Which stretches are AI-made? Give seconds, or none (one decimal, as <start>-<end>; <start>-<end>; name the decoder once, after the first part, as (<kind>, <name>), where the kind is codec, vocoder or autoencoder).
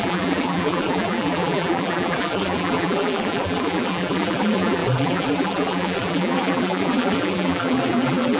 0.0-8.4 (vocoder, BigVGAN v2)